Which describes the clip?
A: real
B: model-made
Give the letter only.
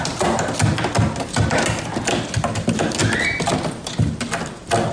A